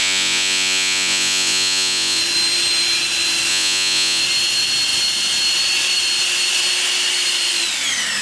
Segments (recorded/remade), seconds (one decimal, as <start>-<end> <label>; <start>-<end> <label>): 0.0-2.2 remade; 2.2-3.5 recorded; 3.5-4.2 remade; 4.2-8.2 recorded

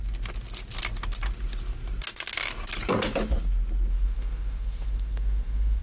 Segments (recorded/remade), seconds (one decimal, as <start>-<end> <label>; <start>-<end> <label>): 0.0-3.9 recorded; 3.9-5.8 remade

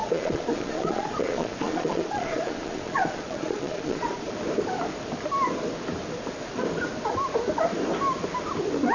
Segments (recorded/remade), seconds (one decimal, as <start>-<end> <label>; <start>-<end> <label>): 0.0-4.3 remade; 4.3-8.9 recorded

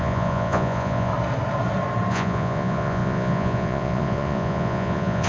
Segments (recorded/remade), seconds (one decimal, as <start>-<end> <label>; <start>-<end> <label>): 0.0-1.1 remade; 1.1-2.1 recorded; 2.1-5.3 remade